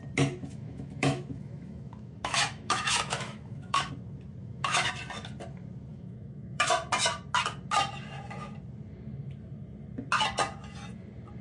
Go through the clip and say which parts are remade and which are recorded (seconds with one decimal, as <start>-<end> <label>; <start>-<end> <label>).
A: 0.0-0.4 recorded; 0.4-3.9 remade; 3.9-4.4 recorded; 4.4-4.9 remade; 4.9-5.9 recorded; 5.9-6.7 remade; 6.7-11.4 recorded

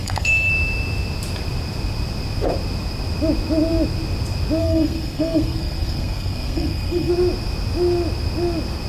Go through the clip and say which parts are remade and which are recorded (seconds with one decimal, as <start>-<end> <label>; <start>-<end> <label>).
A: 0.0-0.5 remade; 0.5-4.6 recorded; 4.6-7.1 remade; 7.1-8.9 recorded

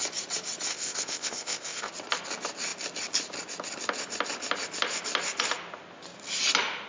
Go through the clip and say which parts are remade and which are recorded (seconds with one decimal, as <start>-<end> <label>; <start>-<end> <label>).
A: 0.0-0.7 recorded; 0.7-1.9 remade; 1.9-6.9 recorded